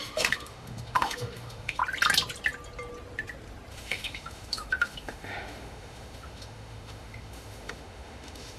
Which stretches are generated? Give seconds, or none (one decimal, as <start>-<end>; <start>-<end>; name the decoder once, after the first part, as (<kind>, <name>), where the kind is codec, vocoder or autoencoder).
0.0-1.8 (autoencoder, DAC-VAE); 3.7-8.6

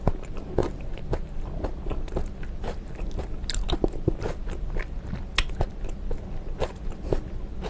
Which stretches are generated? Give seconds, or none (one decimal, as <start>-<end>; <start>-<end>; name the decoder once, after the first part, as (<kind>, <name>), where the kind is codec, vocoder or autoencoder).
none

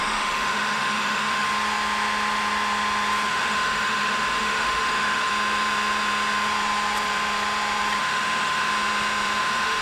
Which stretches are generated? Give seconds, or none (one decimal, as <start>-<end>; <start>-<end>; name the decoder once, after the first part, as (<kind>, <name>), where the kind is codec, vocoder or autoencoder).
0.0-1.5 (autoencoder, DAC-VAE); 3.3-5.3; 8.0-8.7; 9.4-9.8

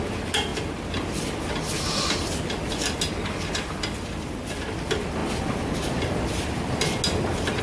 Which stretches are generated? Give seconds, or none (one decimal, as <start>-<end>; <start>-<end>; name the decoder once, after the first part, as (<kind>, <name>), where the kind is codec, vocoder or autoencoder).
none

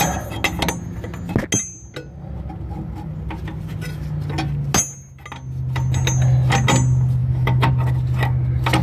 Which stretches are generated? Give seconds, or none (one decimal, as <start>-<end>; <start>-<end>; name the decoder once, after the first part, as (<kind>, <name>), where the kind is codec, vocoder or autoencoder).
7.2-7.7 (autoencoder, DAC-VAE)

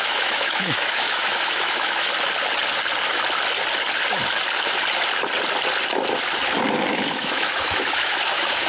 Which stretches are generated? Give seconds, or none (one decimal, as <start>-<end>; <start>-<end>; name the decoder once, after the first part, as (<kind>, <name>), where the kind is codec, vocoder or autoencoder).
0.0-2.1 (autoencoder, DAC-VAE); 6.9-8.7

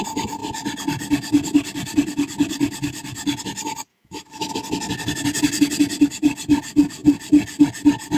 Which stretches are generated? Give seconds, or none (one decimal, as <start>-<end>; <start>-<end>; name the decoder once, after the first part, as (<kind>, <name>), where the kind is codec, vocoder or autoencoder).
3.9-4.5 (autoencoder, DAC-VAE)

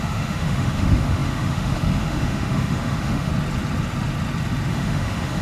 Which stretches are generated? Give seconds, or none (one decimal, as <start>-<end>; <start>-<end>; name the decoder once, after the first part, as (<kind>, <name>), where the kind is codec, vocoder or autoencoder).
0.0-3.3 (autoencoder, DAC-VAE); 4.7-5.4